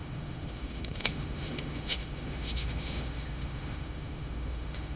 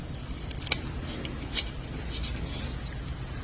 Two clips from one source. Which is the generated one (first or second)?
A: first